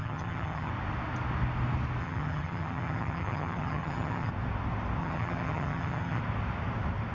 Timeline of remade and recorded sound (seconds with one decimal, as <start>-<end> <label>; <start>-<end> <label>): 0.0-0.7 remade; 0.7-2.0 recorded; 2.0-4.3 remade; 4.3-5.0 recorded; 5.0-6.2 remade; 6.2-7.1 recorded